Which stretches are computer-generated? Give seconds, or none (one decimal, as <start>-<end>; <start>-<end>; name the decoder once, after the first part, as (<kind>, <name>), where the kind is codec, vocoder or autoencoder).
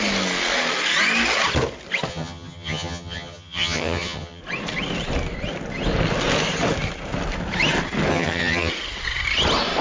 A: 2.1-4.4 (vocoder, HiFi-GAN); 8.1-8.7